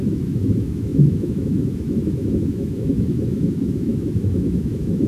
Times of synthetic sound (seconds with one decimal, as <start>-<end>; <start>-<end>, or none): 0.0-5.1